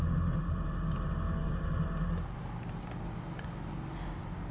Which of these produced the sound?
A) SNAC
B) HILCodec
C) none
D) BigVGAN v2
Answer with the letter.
C